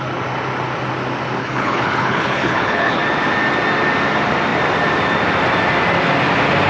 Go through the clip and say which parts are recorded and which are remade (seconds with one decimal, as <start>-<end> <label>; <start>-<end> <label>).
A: 0.0-1.4 recorded; 1.4-3.0 remade; 3.0-6.7 recorded